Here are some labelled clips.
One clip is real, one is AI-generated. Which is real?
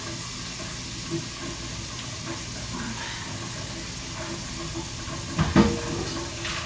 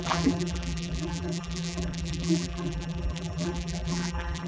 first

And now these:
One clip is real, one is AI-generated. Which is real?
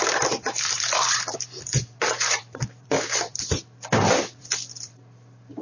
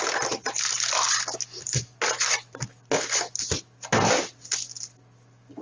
second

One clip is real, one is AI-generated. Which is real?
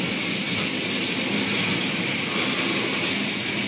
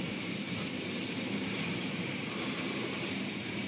first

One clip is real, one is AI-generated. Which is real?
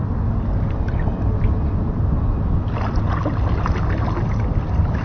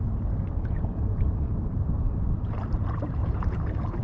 first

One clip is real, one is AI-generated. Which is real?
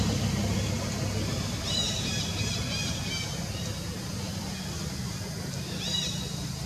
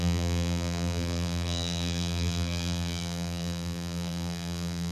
first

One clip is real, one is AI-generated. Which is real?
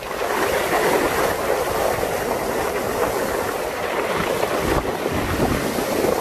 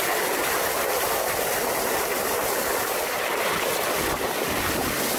first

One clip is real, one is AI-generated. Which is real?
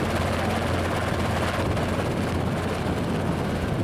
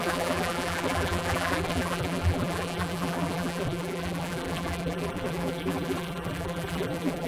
first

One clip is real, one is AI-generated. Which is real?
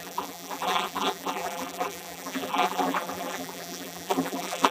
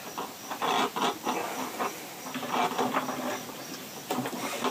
second